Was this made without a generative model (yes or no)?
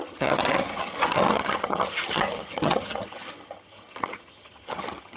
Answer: no